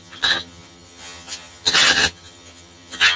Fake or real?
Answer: fake